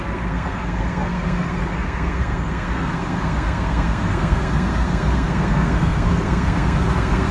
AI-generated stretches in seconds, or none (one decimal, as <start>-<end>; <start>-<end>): 0.0-7.3

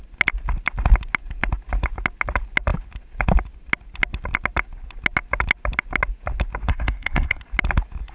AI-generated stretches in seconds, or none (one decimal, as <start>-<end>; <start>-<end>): 6.7-7.4

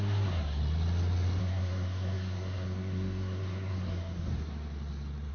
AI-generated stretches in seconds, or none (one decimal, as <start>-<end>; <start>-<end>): 0.0-0.6; 1.4-4.3